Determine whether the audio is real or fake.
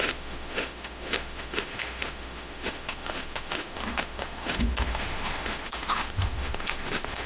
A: fake